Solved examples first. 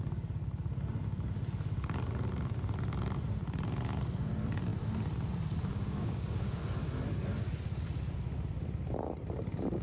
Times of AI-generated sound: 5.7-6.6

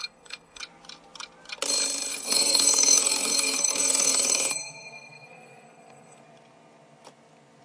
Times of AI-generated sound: 0.0-0.6; 2.1-6.2

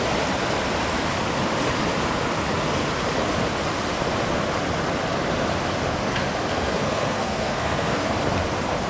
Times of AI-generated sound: 6.5-8.1

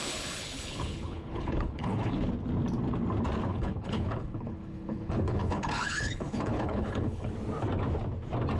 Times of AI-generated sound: 0.0-2.3; 3.5-7.3